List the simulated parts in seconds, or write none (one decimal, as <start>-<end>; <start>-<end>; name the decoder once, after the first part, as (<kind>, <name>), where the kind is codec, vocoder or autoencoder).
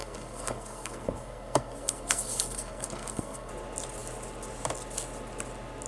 0.0-3.5 (codec, SNAC)